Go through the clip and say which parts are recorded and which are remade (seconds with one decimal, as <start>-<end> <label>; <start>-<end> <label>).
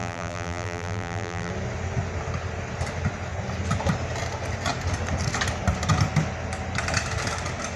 0.0-1.5 remade; 1.5-7.8 recorded